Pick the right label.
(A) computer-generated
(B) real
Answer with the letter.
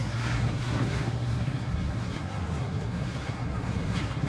A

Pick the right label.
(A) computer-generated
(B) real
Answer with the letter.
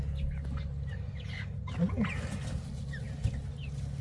B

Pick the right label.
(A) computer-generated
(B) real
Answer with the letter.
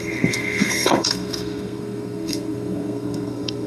A